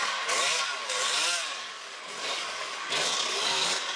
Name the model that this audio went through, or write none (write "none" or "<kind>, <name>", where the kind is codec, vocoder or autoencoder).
codec, DAC